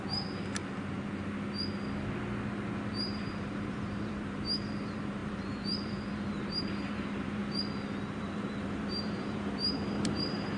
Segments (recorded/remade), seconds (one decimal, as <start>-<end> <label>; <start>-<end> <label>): 0.0-0.6 remade; 0.6-2.9 recorded; 2.9-7.4 remade; 7.4-8.0 recorded; 8.0-10.6 remade